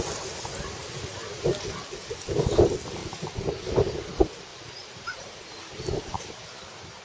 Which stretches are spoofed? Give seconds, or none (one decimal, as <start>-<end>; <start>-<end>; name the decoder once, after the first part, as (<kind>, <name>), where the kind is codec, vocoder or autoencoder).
3.0-3.5 (vocoder, BigVGAN v2); 4.5-5.5